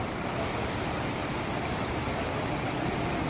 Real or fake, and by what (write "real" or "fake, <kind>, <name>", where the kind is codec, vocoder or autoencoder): real